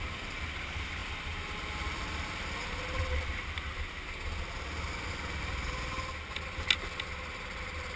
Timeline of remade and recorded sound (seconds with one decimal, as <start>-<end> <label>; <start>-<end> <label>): 0.0-8.0 recorded